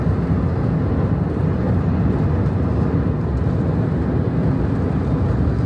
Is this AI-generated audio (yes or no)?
no